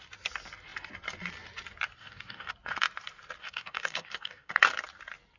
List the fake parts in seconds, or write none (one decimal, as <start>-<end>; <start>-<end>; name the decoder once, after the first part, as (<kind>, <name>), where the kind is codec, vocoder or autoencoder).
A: 2.0-2.5 (codec, DAC); 3.4-4.5